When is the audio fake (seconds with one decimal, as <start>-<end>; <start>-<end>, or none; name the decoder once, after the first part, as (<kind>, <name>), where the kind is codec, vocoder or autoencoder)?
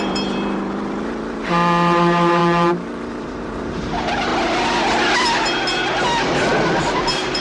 0.0-2.4 (vocoder, BigVGAN v2); 3.1-4.3; 6.9-7.4